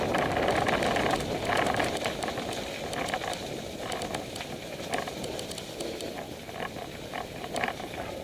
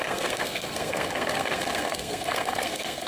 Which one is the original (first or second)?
first